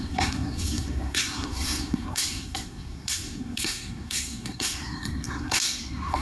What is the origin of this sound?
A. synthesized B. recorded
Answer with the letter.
A